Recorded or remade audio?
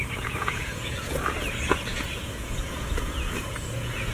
remade